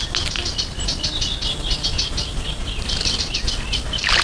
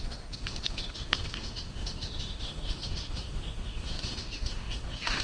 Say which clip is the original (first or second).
first